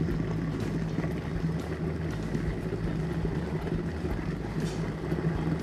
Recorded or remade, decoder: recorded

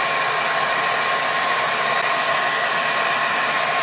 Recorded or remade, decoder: recorded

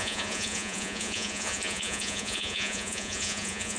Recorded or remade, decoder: remade, vocoder, Vocos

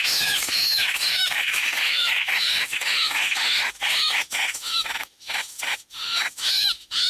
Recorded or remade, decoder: remade, autoencoder, DAC-VAE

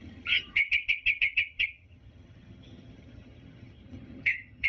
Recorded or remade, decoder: remade, vocoder, HiFi-GAN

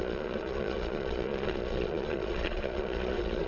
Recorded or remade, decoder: remade, vocoder, Vocos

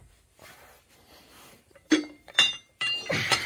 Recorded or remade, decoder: remade, vocoder, BigVGAN v2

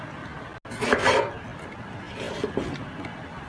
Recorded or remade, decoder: recorded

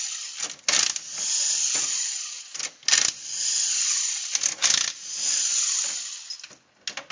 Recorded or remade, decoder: recorded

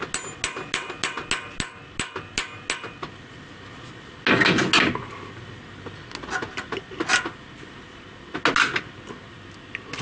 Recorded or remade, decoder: recorded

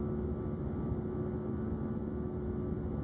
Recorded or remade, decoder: recorded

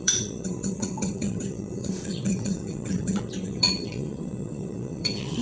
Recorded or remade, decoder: remade, vocoder, WaveNeXt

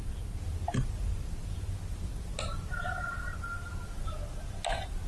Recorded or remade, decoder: recorded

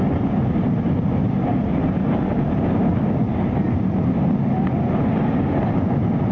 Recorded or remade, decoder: recorded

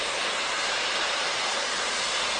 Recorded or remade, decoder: recorded